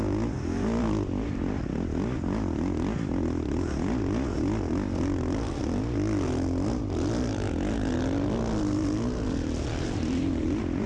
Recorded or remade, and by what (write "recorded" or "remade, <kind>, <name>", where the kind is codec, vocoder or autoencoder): recorded